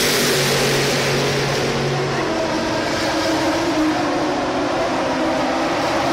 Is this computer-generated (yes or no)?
no